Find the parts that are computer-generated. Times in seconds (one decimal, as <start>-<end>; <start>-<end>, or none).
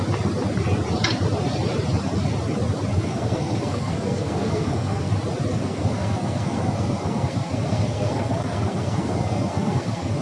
2.9-5.1; 5.5-10.2